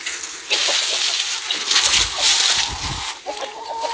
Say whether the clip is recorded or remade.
recorded